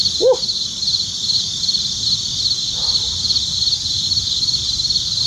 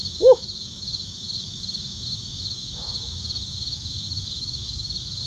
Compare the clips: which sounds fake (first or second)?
second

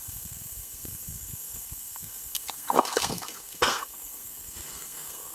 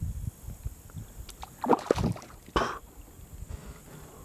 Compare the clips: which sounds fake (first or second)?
first